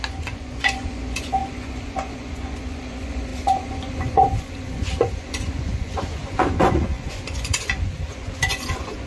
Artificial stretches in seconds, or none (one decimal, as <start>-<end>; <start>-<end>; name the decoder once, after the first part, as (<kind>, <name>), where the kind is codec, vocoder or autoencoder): 0.0-9.1 (vocoder, Vocos)